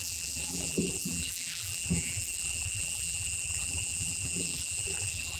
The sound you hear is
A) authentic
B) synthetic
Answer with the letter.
B